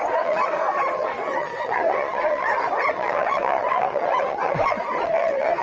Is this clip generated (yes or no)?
yes